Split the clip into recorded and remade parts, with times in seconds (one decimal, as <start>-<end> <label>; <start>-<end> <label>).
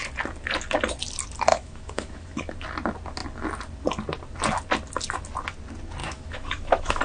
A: 0.0-1.5 recorded; 1.5-2.5 remade; 2.5-6.0 recorded; 6.0-7.0 remade